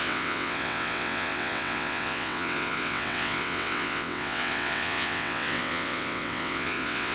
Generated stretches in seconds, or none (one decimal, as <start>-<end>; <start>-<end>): 0.0-7.1